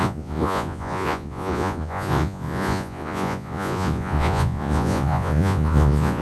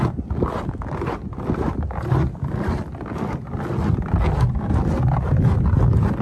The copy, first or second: first